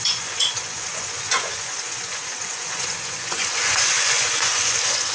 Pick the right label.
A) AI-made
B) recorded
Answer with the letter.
A